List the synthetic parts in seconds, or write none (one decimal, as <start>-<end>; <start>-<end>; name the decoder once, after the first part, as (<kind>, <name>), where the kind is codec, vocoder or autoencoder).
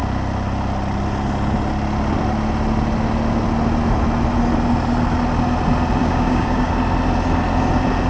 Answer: 6.0-6.7 (codec, DAC)